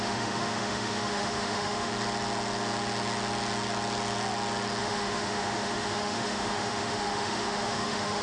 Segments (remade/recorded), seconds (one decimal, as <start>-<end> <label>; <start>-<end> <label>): 0.0-1.9 remade; 1.9-4.8 recorded; 4.8-8.2 remade